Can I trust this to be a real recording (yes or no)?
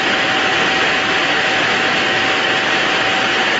yes